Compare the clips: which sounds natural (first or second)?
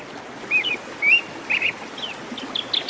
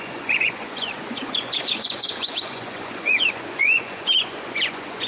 first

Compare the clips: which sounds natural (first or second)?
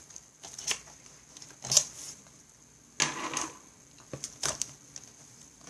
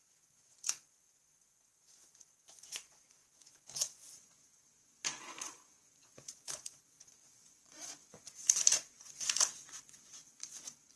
first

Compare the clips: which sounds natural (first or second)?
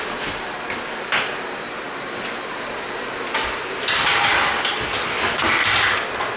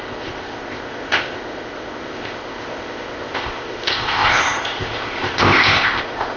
first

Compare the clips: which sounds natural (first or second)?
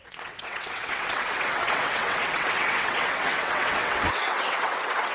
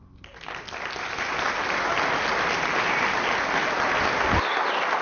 second